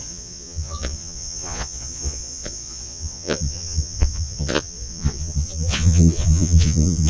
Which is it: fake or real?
fake